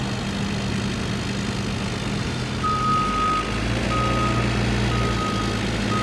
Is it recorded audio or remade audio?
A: recorded